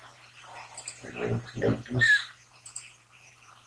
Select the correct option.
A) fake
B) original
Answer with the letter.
A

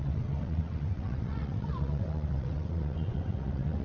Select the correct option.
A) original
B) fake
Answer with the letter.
B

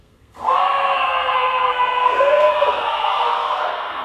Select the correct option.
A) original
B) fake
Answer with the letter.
B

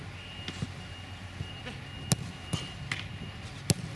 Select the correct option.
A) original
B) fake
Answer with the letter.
A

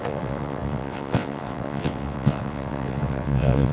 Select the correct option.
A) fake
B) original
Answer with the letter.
A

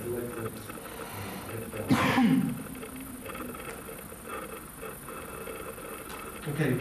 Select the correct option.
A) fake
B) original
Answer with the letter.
B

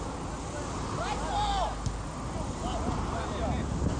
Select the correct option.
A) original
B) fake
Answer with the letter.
A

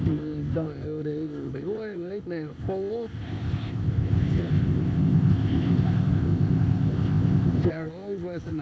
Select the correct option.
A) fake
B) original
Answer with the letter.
A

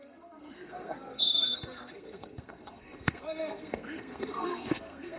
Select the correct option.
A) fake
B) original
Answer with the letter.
A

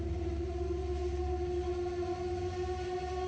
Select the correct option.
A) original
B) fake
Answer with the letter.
A